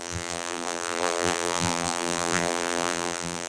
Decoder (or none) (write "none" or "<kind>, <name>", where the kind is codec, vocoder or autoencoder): vocoder, BigVGAN v2